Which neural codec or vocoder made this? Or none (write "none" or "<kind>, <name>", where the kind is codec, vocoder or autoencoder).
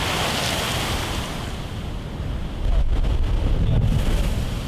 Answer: none